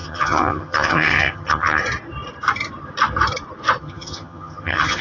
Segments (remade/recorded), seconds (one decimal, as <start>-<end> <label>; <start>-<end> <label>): 0.0-1.8 remade; 1.8-3.8 recorded; 3.8-5.0 remade